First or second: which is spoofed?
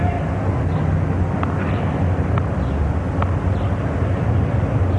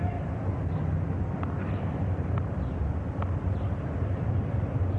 second